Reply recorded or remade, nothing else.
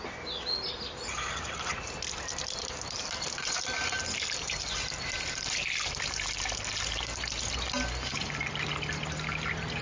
recorded